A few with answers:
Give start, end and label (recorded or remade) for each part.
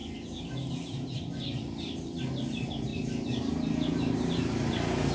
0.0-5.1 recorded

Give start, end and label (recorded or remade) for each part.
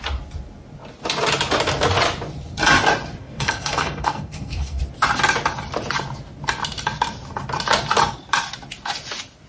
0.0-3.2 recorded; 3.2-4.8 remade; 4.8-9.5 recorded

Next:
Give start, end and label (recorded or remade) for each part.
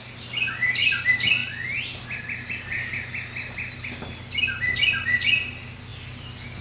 0.0-6.6 recorded